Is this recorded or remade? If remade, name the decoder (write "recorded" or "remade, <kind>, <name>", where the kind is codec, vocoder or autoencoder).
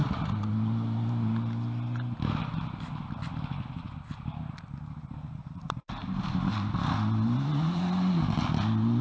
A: recorded